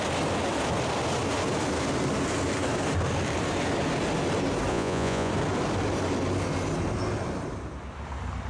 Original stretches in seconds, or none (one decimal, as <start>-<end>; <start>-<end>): 0.0-4.7; 5.3-8.5